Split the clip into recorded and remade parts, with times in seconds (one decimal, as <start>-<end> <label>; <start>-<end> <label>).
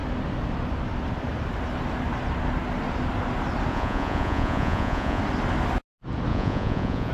0.0-3.7 recorded; 3.7-5.2 remade; 5.2-6.3 recorded; 6.3-7.1 remade